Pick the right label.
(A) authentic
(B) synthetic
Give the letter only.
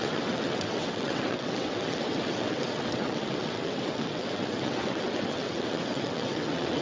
B